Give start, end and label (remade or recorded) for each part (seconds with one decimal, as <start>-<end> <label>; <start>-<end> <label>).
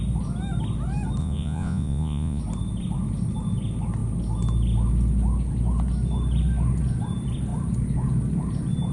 0.0-1.2 recorded; 1.2-2.4 remade; 2.4-8.9 recorded